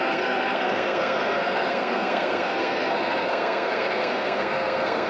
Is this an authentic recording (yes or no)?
no